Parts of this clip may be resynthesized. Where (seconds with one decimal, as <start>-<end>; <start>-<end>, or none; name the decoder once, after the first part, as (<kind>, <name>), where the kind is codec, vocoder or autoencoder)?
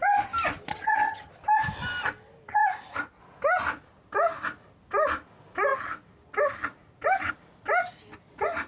0.7-1.3 (vocoder, HiFi-GAN)